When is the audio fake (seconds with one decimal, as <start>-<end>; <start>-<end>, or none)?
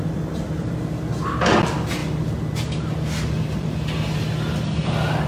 none